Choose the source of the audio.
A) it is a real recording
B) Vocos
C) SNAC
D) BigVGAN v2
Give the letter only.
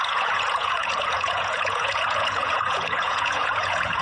B